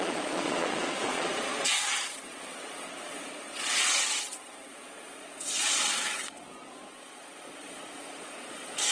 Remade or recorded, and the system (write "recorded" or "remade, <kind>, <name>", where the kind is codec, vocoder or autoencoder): remade, vocoder, Vocos